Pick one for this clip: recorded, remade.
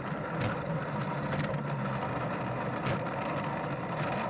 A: remade